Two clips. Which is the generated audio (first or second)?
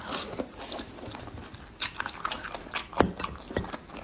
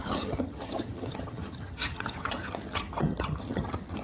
second